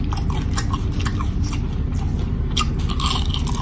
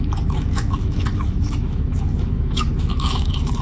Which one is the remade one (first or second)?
second